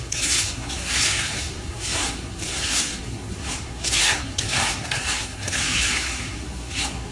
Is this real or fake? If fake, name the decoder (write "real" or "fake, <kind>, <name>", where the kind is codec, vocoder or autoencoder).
fake, codec, SNAC